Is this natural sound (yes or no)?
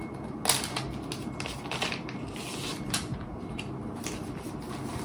yes